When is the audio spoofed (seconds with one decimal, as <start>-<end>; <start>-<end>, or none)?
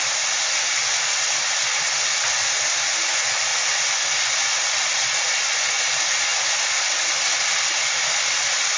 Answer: none